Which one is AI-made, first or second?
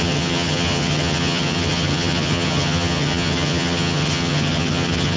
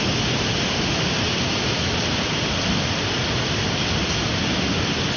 first